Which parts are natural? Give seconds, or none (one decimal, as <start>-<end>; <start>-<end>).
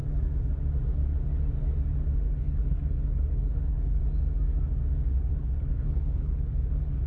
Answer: 0.0-2.4; 4.0-5.1